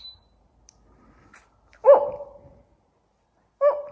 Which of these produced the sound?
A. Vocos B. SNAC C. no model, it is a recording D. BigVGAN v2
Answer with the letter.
C